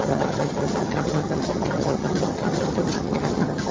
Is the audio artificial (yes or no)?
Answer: yes